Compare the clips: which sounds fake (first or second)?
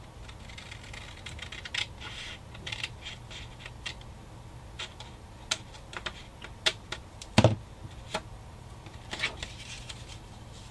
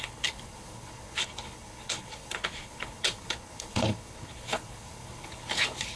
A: second